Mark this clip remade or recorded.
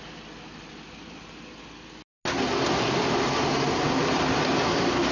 recorded